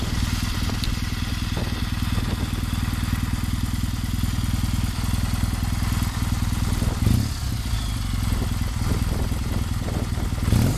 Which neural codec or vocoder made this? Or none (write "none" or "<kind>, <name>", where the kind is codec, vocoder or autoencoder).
none